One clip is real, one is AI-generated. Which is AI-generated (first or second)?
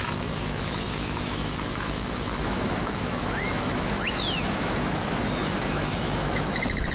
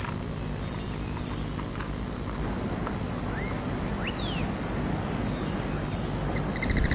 first